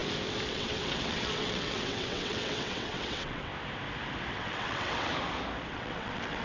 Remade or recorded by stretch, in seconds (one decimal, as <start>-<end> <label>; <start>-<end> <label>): 0.0-0.5 recorded; 0.5-3.5 remade; 3.5-4.3 recorded; 4.3-5.1 remade; 5.1-5.7 recorded; 5.7-6.4 remade

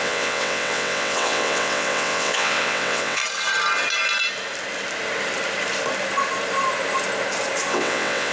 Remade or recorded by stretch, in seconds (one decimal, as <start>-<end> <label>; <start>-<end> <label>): 0.0-3.2 remade; 3.2-7.7 recorded; 7.7-8.3 remade

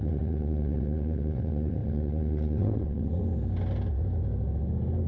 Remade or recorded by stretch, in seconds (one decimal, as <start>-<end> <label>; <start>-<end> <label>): 0.0-3.2 remade; 3.2-5.1 recorded